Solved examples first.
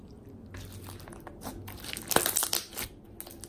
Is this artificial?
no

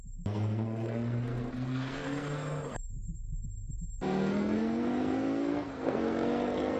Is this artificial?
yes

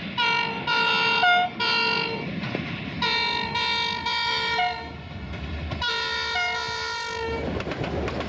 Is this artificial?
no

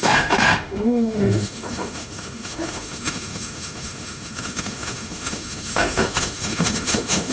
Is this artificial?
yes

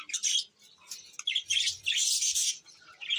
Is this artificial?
yes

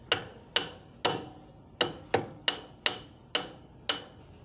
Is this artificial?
no